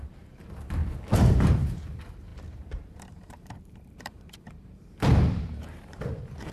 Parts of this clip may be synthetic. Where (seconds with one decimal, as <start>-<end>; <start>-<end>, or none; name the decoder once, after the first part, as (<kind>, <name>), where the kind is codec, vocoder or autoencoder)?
0.0-0.8 (vocoder, BigVGAN v2); 1.3-6.5